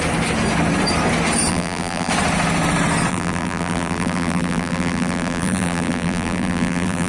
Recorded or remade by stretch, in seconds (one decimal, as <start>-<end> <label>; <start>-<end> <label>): 0.0-1.5 recorded; 1.5-2.1 remade; 2.1-3.1 recorded; 3.1-7.1 remade